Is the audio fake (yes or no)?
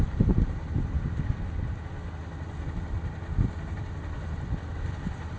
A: no